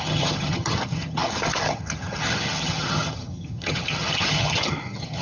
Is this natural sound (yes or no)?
no